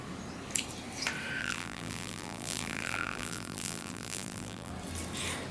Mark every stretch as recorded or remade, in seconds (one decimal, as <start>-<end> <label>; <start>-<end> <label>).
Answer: 0.0-1.4 recorded; 1.4-4.7 remade; 4.7-5.5 recorded